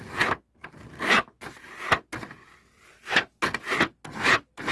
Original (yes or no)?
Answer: yes